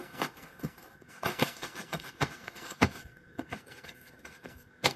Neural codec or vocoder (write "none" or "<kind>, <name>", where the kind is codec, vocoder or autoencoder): codec, SNAC